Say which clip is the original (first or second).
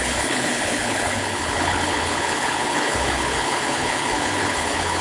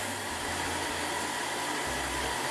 second